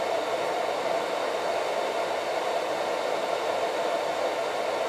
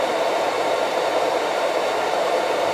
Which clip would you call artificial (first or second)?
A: second